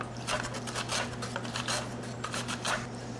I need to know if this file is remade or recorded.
recorded